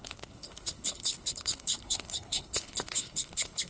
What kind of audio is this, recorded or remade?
remade